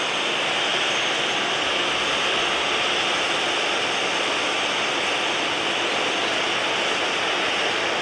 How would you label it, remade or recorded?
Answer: recorded